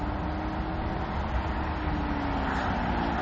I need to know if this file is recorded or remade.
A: recorded